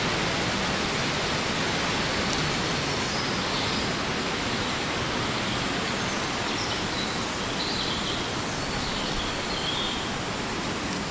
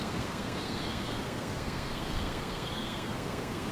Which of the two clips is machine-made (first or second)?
second